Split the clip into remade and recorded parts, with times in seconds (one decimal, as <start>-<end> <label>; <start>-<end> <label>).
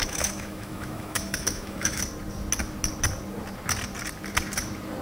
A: 0.0-2.0 remade; 2.0-5.0 recorded